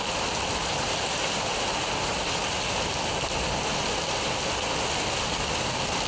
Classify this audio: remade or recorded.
recorded